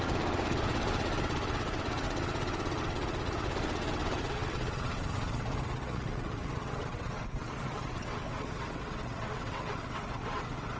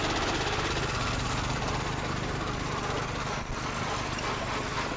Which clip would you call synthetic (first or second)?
first